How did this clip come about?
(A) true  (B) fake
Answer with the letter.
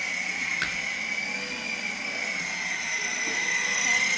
A